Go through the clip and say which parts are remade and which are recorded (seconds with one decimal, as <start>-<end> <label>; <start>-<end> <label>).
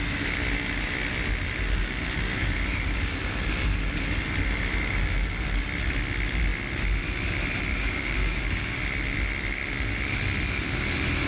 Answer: 0.0-7.7 recorded; 7.7-8.8 remade; 8.8-11.3 recorded